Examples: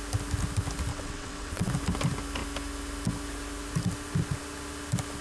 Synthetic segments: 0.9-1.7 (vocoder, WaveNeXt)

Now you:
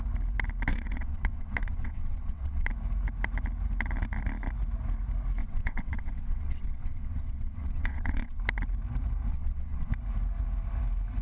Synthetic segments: 0.7-2.7 (vocoder, WaveNeXt); 5.4-8.4; 9.3-9.9